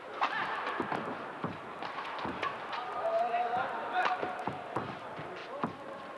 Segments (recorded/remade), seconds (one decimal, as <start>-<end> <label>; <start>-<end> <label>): 0.0-6.2 recorded

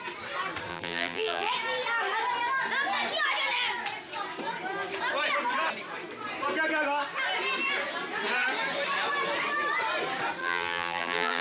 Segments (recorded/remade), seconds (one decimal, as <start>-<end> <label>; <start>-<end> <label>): 0.0-0.7 recorded; 0.7-1.5 remade; 1.5-10.4 recorded; 10.4-11.4 remade

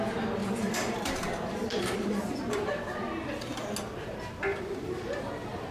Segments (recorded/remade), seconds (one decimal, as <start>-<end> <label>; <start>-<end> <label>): 0.0-0.4 recorded; 0.4-2.8 remade; 2.8-4.5 recorded; 4.5-5.2 remade; 5.2-5.7 recorded

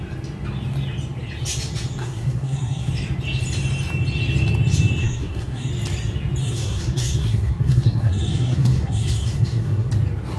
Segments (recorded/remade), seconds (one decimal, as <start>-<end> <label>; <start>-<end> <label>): 0.0-2.0 recorded; 2.0-2.9 remade; 2.9-5.0 recorded; 5.0-5.7 remade; 5.7-6.4 recorded; 6.4-9.9 remade; 9.9-10.4 recorded

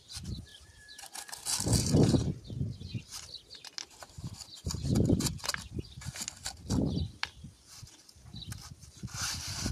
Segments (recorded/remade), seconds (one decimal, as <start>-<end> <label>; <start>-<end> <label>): 0.0-9.7 recorded

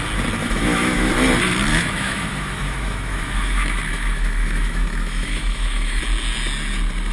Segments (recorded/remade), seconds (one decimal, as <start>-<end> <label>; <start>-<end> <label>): 0.0-0.4 recorded; 0.4-1.1 remade; 1.1-1.7 recorded; 1.7-6.0 remade; 6.0-7.1 recorded